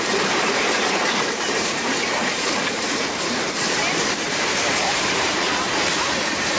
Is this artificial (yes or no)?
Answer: yes